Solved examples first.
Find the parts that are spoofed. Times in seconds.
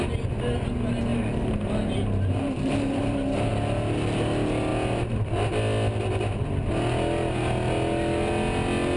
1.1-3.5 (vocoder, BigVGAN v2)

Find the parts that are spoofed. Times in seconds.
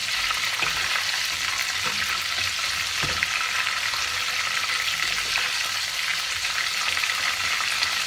0.0-0.6 (vocoder, BigVGAN v2); 6.1-7.5